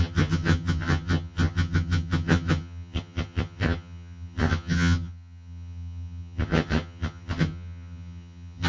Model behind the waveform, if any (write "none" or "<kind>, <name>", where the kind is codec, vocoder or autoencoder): vocoder, HiFi-GAN